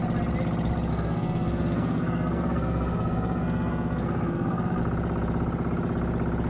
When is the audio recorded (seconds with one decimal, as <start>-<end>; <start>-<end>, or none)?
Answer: 0.0-0.9; 4.8-6.5